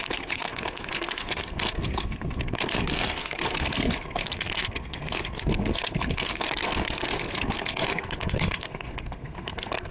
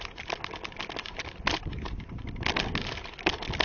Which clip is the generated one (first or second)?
first